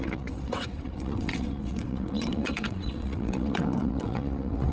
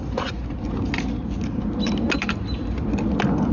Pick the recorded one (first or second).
second